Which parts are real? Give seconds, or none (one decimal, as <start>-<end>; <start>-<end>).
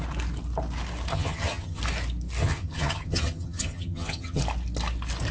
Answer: 0.0-1.1; 1.8-2.4; 4.4-5.3